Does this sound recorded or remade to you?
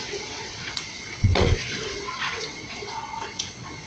remade